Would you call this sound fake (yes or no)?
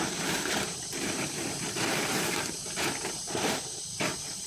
yes